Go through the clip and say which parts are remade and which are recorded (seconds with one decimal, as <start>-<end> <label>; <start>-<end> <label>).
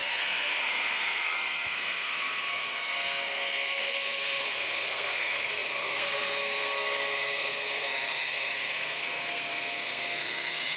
0.0-10.8 remade